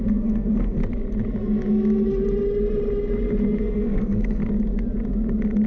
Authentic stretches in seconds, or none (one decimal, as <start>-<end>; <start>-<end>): 0.8-3.6; 4.4-5.7